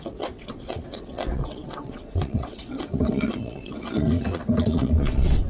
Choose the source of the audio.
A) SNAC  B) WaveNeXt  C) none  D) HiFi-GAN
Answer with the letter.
B